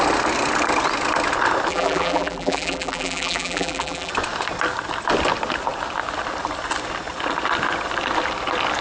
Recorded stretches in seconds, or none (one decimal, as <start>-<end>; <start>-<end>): 0.0-1.7; 4.1-8.8